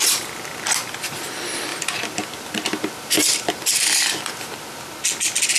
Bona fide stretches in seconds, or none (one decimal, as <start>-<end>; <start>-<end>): 0.0-1.7; 4.5-5.6